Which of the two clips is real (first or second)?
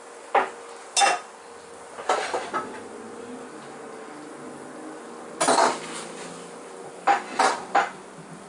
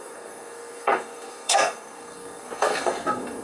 first